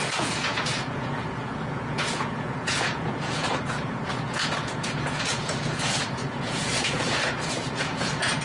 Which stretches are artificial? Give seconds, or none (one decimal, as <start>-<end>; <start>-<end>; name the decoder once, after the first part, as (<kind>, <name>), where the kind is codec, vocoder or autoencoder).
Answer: 0.0-8.4 (vocoder, Vocos)